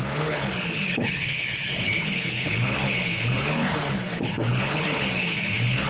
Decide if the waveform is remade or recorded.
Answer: remade